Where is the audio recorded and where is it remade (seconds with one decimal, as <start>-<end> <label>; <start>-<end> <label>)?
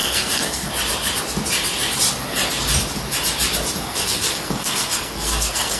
0.0-0.7 remade; 0.7-3.9 recorded; 3.9-5.8 remade